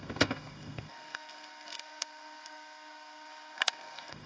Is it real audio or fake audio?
fake